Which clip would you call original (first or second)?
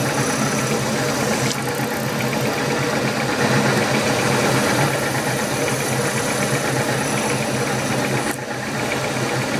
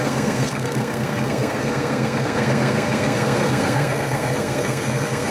first